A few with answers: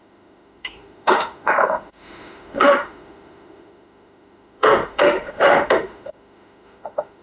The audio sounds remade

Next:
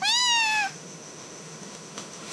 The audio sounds remade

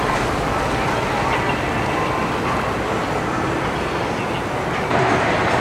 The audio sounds recorded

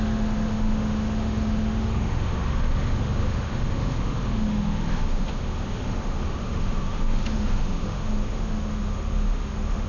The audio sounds remade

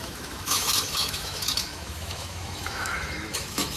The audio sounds remade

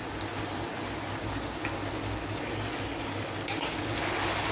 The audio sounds recorded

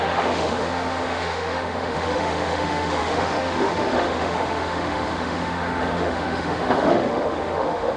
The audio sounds remade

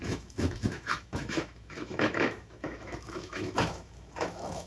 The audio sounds remade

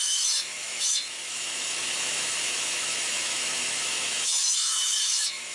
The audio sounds remade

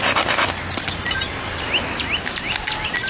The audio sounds recorded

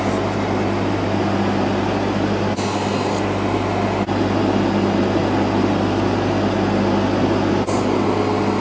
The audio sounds recorded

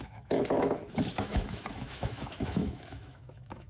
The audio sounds remade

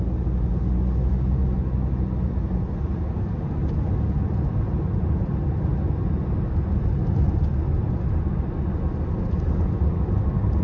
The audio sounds recorded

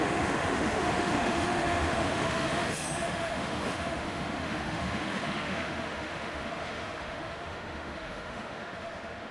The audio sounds remade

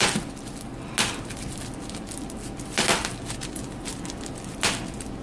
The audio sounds recorded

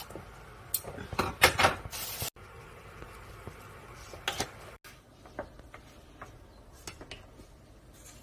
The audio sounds recorded